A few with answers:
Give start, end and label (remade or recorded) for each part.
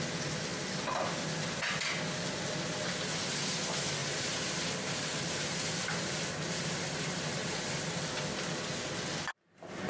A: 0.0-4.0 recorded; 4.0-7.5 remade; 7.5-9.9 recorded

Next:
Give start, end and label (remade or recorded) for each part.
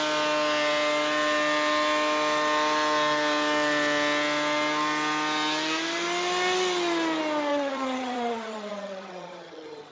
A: 0.0-7.5 recorded; 7.5-9.9 remade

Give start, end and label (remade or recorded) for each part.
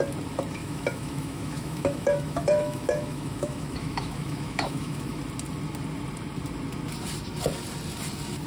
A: 0.0-0.6 recorded; 0.6-5.2 remade; 5.2-8.5 recorded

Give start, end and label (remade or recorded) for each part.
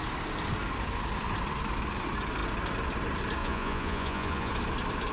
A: 0.0-3.4 recorded; 3.4-4.5 remade; 4.5-5.1 recorded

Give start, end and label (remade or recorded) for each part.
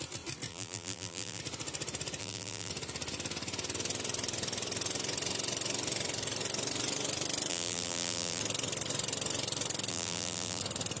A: 0.0-0.5 recorded; 0.5-1.4 remade; 1.4-2.2 recorded; 2.2-2.7 remade; 2.7-7.5 recorded; 7.5-8.4 remade; 8.4-9.9 recorded; 9.9-10.6 remade; 10.6-11.0 recorded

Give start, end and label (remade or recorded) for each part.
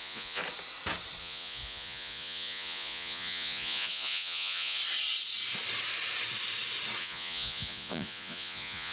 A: 0.0-0.4 remade; 0.4-1.2 recorded; 1.2-4.8 remade; 4.8-7.0 recorded; 7.0-8.9 remade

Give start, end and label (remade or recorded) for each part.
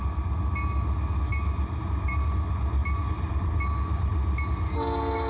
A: 0.0-1.3 recorded; 1.3-2.2 remade; 2.2-2.8 recorded; 2.8-3.5 remade; 3.5-5.3 recorded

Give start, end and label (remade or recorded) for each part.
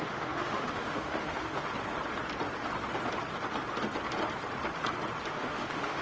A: 0.0-1.7 remade; 1.7-5.3 recorded; 5.3-6.0 remade